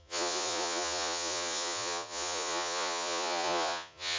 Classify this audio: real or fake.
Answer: fake